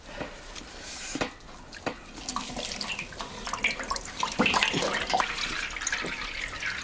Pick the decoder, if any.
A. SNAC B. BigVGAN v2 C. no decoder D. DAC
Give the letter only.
B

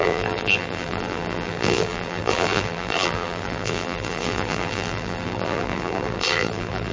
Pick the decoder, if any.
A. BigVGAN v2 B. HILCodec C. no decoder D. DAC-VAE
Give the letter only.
A